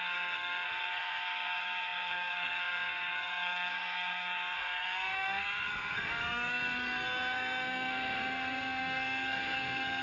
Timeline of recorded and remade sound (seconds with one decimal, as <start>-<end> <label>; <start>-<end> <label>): 0.0-10.0 remade